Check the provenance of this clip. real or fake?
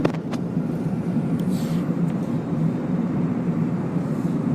fake